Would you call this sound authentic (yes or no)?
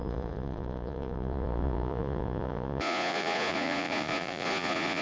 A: no